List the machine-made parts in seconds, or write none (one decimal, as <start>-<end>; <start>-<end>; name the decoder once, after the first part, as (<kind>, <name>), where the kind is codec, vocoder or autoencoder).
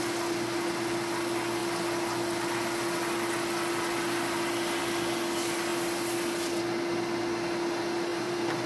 8.1-8.7 (vocoder, BigVGAN v2)